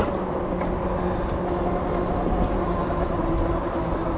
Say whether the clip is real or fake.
real